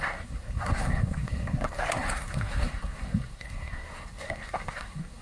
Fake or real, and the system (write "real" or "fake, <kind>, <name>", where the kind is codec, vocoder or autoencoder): fake, codec, SNAC